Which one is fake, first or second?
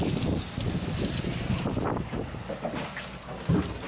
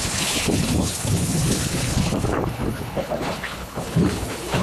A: second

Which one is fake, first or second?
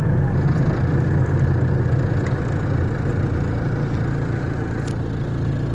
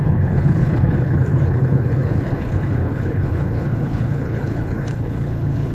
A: second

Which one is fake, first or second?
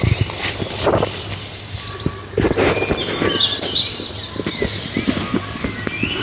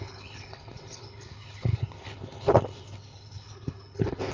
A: second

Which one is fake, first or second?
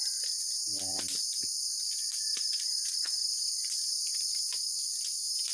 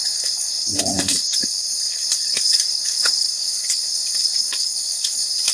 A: second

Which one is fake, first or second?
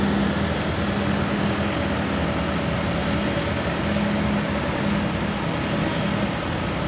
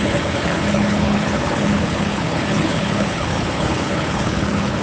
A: second